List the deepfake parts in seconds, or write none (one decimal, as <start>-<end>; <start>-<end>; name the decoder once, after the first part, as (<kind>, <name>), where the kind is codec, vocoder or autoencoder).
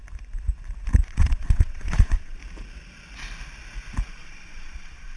1.1-2.4 (vocoder, Vocos); 4.1-5.2